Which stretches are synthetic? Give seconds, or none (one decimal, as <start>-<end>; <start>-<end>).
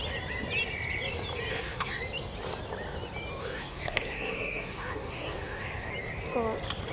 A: 1.5-2.0; 3.4-5.9